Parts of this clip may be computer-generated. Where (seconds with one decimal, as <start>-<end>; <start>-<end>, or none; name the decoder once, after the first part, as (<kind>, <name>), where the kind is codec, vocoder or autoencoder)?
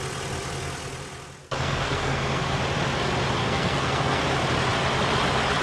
1.4-2.6 (codec, SNAC); 3.4-4.2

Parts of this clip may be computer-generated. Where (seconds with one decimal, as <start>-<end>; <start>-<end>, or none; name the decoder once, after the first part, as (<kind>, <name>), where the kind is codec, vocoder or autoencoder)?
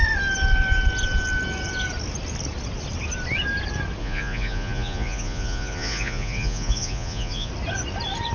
4.0-7.5 (vocoder, Vocos)